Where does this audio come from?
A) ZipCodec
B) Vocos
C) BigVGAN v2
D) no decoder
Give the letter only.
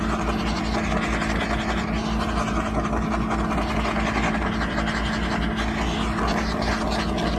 D